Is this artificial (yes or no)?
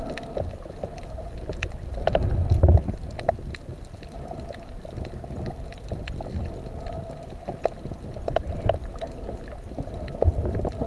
no